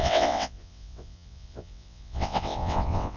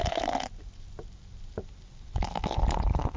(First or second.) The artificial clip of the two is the first